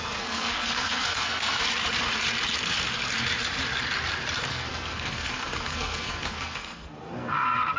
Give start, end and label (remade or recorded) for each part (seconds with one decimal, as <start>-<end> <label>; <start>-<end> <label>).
0.0-1.6 remade; 1.6-4.5 recorded; 4.5-7.8 remade